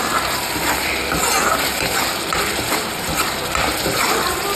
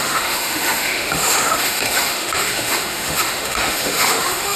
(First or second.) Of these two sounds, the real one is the first